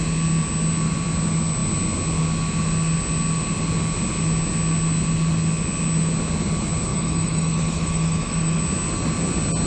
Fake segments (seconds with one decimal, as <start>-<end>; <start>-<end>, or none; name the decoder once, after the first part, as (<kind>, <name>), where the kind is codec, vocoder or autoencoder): 6.9-8.6 (autoencoder, DAC-VAE)